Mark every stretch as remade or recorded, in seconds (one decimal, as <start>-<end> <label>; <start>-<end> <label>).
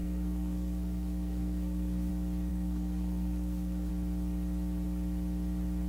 0.0-2.1 remade; 2.1-2.5 recorded; 2.5-3.9 remade; 3.9-5.9 recorded